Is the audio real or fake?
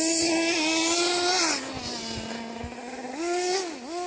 real